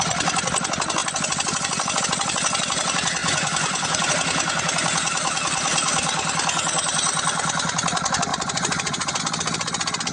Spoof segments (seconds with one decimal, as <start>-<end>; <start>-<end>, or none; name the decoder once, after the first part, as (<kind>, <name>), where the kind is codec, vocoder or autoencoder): 3.2-4.1 (vocoder, Vocos); 8.3-9.2

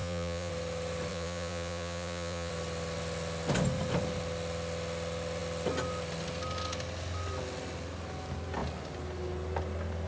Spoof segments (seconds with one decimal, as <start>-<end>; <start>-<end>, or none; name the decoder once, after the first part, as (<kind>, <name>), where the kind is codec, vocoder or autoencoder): 0.0-0.5 (vocoder, Vocos); 1.1-2.5

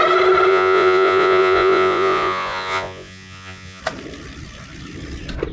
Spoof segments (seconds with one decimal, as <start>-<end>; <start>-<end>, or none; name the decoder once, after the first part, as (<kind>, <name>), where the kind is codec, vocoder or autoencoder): 0.5-3.8 (vocoder, Vocos)

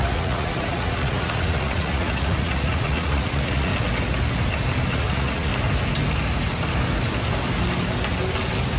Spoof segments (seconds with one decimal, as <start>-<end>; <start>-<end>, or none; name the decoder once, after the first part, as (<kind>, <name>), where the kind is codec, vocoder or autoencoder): 0.0-3.7 (vocoder, Vocos); 4.9-5.5

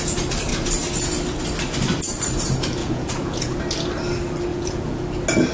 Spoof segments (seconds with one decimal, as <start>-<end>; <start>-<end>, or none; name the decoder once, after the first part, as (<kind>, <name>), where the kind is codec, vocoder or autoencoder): 2.8-3.6 (vocoder, Vocos); 4.5-5.0

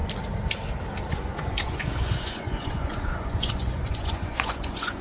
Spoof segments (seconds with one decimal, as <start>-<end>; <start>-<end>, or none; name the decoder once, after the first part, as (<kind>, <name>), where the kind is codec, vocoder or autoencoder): 1.1-5.0 (vocoder, Vocos)